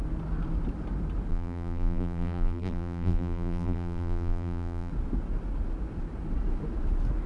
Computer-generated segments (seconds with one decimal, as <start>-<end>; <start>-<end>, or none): 1.3-4.9